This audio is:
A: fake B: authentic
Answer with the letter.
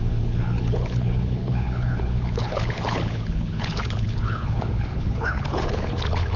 A